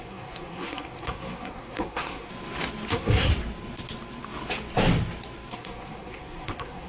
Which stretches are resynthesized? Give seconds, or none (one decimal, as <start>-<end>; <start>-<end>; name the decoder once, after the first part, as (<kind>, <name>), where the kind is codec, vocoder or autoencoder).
0.0-2.3 (codec, SNAC); 2.9-3.3; 5.5-6.9